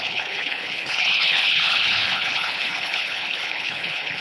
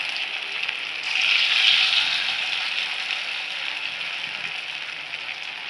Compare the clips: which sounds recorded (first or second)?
second